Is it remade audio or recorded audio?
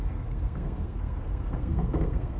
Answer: remade